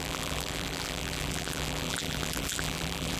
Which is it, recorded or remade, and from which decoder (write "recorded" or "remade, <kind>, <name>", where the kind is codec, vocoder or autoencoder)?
remade, vocoder, BigVGAN v2